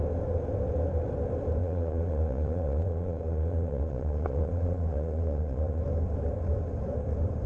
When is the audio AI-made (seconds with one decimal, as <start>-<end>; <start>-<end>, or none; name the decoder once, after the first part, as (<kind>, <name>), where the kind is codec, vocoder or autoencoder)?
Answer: 1.6-5.8 (vocoder, Vocos)